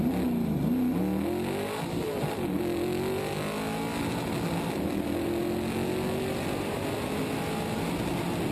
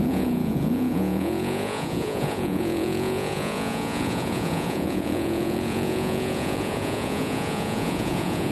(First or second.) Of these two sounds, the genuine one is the first